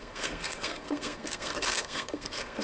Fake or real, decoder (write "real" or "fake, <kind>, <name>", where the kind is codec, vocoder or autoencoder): fake, codec, SNAC